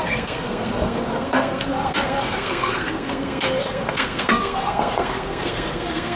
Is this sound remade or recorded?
remade